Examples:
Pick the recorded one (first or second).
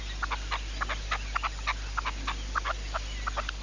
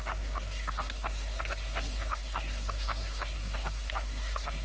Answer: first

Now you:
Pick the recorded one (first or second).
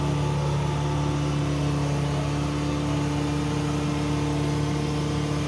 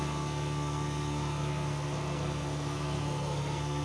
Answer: first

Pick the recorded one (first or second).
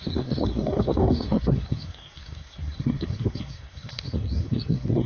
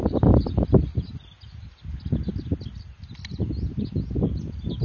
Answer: second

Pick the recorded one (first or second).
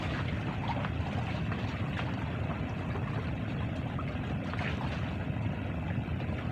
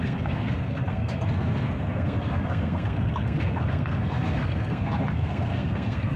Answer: first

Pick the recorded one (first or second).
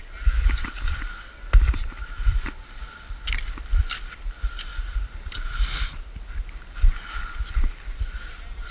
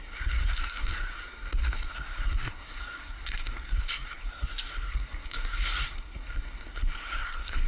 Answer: first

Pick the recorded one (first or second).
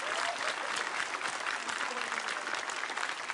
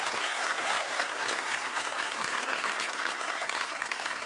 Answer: first